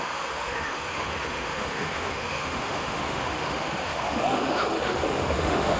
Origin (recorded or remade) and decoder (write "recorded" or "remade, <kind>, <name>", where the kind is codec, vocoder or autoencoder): remade, autoencoder, DAC-VAE